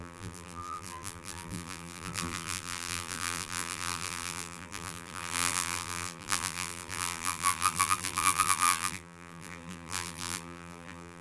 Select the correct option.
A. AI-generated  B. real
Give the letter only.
A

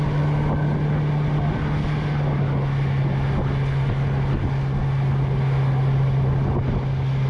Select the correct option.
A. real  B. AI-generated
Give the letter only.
A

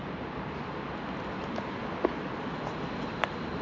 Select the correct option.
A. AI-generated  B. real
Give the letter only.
B